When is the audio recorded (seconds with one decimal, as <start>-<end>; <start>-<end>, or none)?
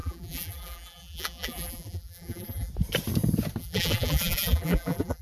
2.7-3.6